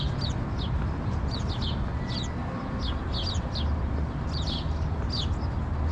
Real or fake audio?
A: real